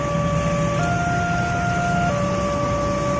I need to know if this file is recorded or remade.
recorded